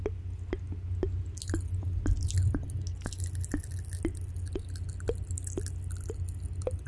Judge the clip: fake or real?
real